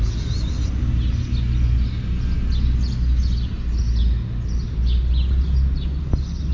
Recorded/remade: recorded